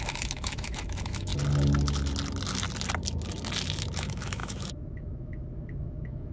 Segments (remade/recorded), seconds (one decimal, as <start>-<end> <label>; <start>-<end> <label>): 0.0-1.3 remade; 1.3-3.8 recorded; 3.8-6.3 remade